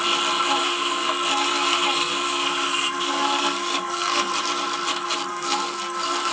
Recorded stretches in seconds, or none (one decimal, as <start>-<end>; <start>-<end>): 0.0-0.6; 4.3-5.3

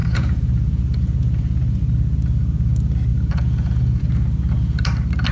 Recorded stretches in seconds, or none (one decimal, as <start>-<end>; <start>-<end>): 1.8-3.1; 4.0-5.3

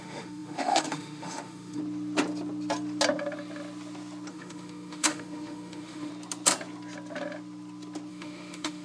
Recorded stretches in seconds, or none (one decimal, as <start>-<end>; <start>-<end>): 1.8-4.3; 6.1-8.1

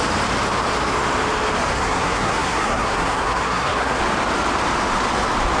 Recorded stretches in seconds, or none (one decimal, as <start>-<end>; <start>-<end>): 0.0-1.7; 4.0-5.6

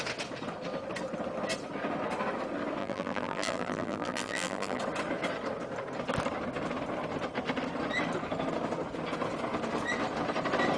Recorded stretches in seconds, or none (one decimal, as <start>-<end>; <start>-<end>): 0.0-2.8; 4.8-10.8